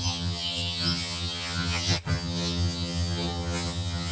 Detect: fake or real fake